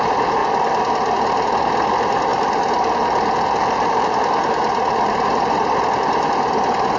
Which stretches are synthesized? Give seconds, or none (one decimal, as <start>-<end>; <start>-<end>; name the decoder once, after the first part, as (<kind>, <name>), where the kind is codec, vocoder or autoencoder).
2.3-5.1 (vocoder, BigVGAN v2)